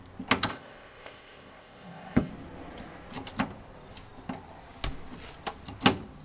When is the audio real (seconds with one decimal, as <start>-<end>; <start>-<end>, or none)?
0.0-0.5; 2.3-6.2